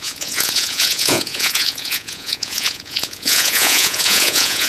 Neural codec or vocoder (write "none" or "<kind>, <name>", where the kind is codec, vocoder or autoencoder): vocoder, Vocos